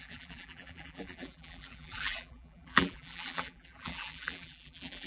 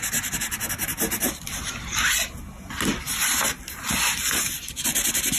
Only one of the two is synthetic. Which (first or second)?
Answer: first